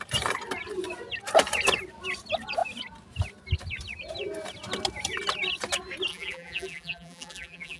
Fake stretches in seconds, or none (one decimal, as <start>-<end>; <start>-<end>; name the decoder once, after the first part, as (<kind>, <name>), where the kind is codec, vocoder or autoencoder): 6.1-7.8 (vocoder, BigVGAN v2)